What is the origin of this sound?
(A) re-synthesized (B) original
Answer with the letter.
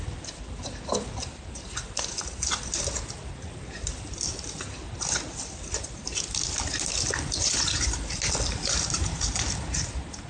B